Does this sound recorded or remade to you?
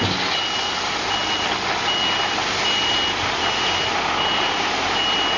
recorded